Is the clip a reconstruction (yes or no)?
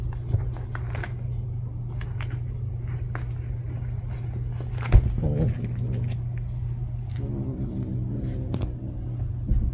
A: no